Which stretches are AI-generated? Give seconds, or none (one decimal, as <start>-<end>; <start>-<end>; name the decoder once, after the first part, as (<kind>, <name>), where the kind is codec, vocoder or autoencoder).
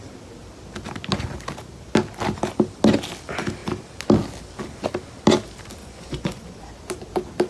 5.8-6.6 (vocoder, Vocos)